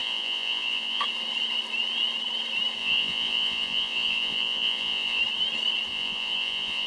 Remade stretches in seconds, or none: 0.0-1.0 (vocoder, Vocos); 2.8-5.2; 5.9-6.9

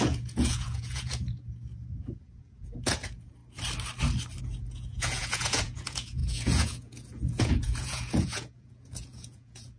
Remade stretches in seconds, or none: 0.0-3.4 (vocoder, Vocos); 4.4-9.8

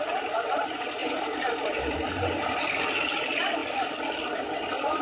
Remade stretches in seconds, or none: none

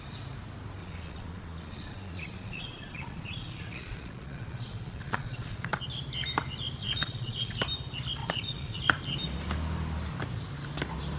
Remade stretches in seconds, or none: 0.8-5.7 (vocoder, Vocos); 6.8-7.6; 8.2-8.8

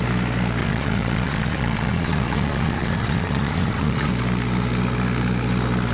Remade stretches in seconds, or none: 0.6-4.1 (vocoder, Vocos)